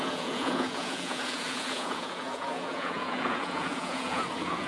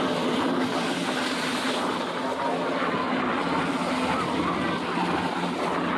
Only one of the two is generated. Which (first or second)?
first